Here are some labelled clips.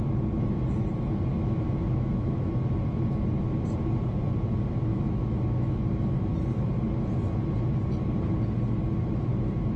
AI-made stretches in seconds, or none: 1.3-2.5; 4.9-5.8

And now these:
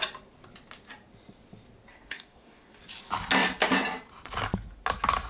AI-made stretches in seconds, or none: 1.9-2.8

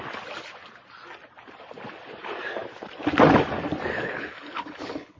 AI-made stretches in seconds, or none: 3.9-5.2

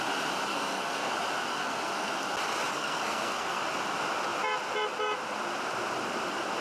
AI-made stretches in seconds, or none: 0.5-1.1; 1.5-2.1; 2.7-3.6